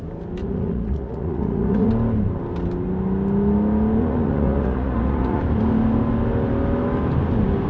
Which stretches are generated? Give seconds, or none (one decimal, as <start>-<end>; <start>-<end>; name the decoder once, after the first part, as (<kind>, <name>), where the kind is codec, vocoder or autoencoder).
0.4-1.9 (vocoder, Vocos); 4.0-5.4